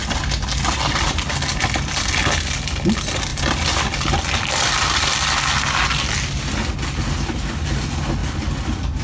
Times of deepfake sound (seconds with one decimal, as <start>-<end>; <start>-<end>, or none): 3.3-5.3; 8.2-9.0